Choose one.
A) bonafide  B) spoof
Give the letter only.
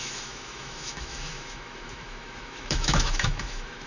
B